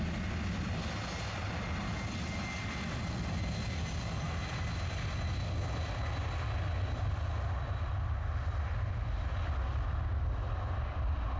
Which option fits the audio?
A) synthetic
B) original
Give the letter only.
B